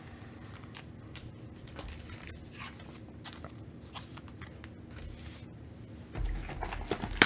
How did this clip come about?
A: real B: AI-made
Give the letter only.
A